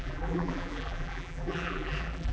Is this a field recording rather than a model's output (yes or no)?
no